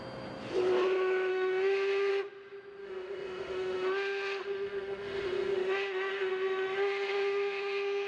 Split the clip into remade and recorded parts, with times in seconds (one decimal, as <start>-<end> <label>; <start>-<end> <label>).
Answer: 0.0-1.3 recorded; 1.3-2.1 remade; 2.1-2.8 recorded; 2.8-8.1 remade